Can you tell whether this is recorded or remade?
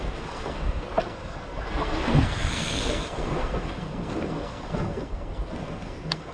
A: remade